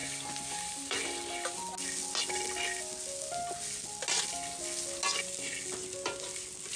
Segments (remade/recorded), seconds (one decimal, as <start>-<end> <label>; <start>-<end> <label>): 0.0-6.8 recorded